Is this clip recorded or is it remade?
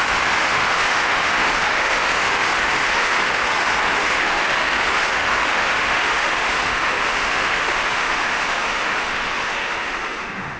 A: remade